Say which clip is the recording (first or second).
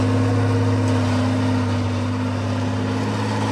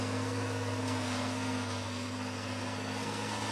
first